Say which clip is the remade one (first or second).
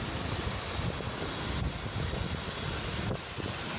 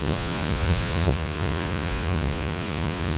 second